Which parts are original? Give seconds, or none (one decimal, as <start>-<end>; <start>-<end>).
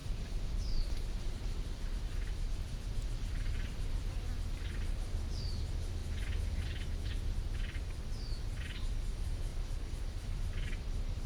none